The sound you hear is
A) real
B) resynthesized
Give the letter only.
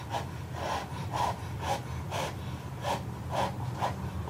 A